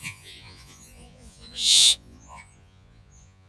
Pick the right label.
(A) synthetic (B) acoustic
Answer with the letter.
A